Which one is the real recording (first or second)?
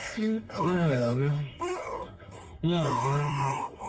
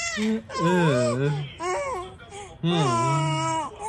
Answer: second